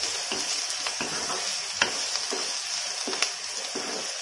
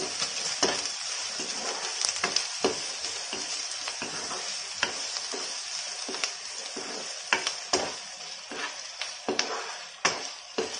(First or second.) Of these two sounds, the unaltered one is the first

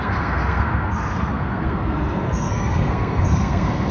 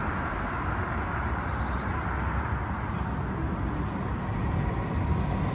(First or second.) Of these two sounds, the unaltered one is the second